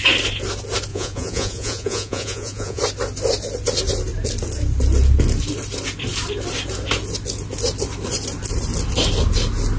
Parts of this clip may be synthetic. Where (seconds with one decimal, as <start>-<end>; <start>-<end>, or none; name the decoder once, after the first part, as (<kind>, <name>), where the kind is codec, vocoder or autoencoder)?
0.9-2.8 (vocoder, Vocos)